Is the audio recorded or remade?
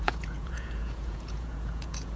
remade